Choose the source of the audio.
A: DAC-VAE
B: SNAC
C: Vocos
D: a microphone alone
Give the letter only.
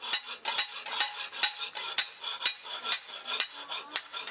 D